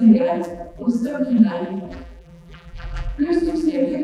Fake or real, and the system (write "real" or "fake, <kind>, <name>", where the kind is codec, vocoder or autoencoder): fake, vocoder, BigVGAN v2